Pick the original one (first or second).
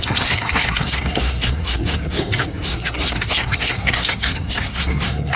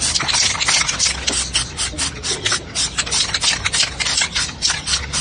second